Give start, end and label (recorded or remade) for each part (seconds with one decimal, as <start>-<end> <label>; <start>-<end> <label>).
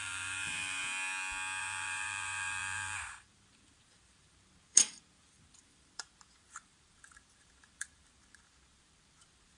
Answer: 0.0-0.8 remade; 0.8-1.6 recorded; 1.6-9.6 remade